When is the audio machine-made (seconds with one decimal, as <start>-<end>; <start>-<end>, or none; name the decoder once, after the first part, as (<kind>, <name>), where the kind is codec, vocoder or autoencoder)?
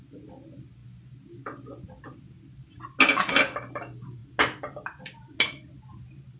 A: none